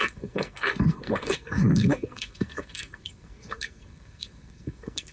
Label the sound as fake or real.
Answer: fake